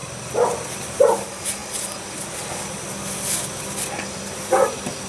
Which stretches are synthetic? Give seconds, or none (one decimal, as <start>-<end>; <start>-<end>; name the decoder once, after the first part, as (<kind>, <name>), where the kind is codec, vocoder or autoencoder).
none